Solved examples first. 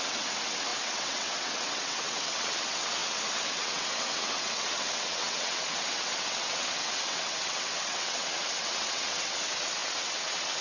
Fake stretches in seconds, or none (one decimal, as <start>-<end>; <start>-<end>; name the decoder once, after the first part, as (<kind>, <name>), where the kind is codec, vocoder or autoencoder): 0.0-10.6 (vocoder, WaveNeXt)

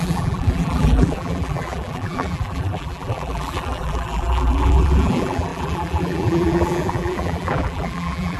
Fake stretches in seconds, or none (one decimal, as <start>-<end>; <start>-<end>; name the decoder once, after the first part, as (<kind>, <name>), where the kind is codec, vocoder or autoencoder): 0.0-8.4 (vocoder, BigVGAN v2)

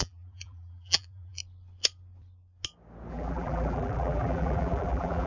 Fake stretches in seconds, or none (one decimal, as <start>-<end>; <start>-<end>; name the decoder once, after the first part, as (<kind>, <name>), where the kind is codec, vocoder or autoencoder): 0.0-1.4 (vocoder, BigVGAN v2); 3.1-5.3

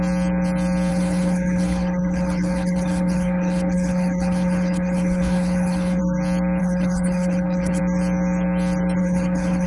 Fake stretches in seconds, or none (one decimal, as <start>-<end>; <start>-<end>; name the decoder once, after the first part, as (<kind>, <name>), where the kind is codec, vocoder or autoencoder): 0.9-6.0 (codec, HILCodec); 6.6-7.8; 9.0-9.7